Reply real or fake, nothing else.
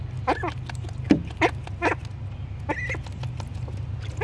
real